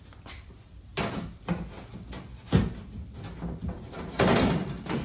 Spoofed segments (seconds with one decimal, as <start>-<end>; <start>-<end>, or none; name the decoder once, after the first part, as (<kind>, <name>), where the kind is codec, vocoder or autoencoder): 0.0-0.9 (vocoder, BigVGAN v2); 2.3-5.0